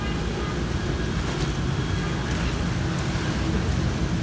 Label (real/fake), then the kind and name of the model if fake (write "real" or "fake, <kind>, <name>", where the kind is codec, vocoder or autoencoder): real